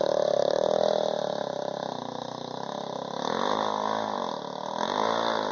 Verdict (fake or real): real